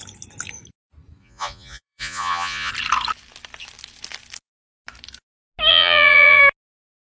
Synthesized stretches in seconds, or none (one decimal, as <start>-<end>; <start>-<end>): 1.2-2.7; 5.7-6.4